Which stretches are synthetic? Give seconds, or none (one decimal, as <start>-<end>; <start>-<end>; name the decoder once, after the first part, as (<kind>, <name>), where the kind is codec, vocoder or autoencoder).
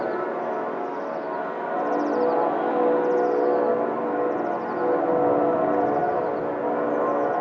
none